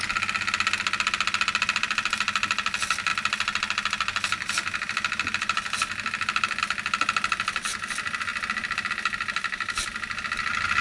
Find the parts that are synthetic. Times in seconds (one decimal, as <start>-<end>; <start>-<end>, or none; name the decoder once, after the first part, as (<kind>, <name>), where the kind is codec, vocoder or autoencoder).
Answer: none